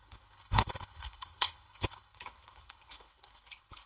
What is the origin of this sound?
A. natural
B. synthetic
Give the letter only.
B